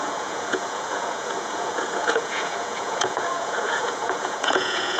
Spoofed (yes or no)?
yes